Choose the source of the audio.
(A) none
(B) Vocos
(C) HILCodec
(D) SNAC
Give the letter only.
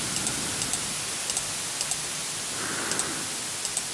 A